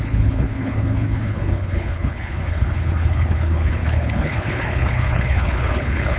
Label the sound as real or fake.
fake